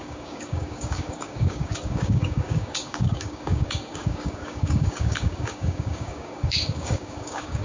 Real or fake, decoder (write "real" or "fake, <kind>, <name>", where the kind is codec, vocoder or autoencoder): fake, codec, DAC